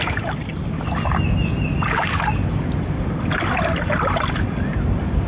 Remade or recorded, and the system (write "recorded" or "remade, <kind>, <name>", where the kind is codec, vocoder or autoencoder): recorded